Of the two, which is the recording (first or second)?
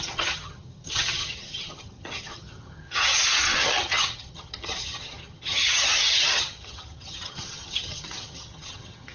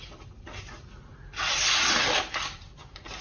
second